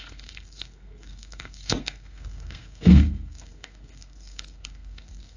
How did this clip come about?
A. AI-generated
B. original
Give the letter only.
A